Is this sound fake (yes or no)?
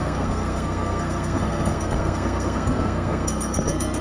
yes